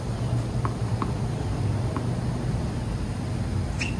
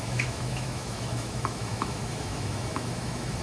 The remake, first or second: second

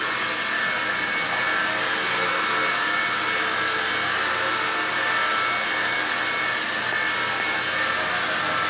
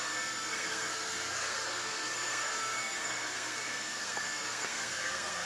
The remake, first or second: second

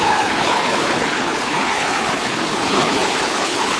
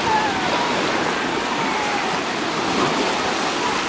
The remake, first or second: first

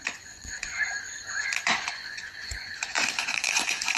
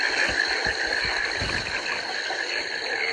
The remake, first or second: first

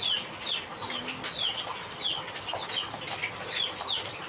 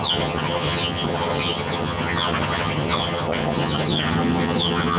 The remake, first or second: second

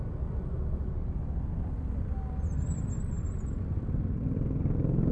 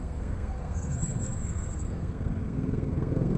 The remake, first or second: second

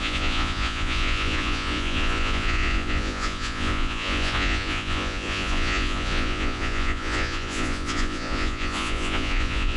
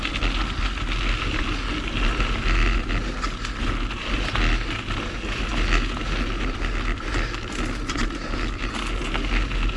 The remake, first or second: first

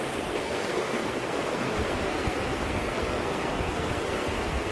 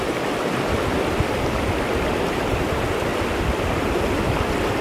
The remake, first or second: first